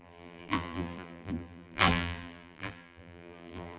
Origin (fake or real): fake